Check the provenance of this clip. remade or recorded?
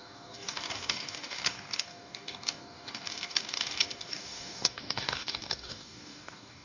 remade